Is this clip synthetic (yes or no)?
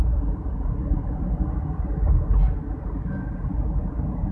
no